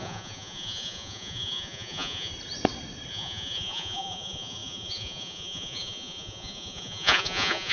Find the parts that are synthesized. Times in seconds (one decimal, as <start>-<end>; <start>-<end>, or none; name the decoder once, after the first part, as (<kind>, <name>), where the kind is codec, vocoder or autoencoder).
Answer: 0.0-2.3 (vocoder, Vocos); 3.1-7.7